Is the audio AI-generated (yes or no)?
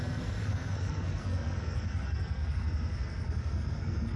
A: yes